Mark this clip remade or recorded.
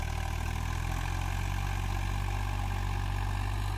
recorded